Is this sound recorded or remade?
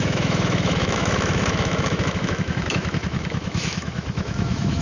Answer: remade